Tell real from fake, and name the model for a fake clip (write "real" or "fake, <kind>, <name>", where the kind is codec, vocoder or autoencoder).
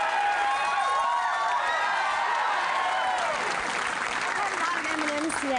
real